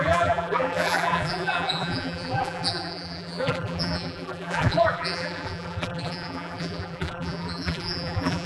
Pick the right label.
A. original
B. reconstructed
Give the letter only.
B